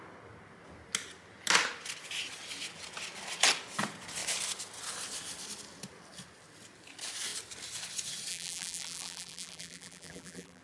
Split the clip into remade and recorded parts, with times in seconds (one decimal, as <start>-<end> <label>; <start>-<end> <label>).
0.0-8.3 recorded; 8.3-10.6 remade